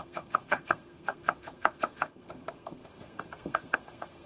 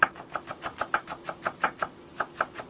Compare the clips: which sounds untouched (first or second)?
second